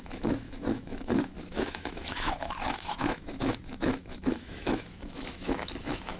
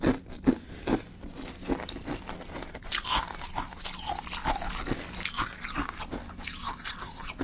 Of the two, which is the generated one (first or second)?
first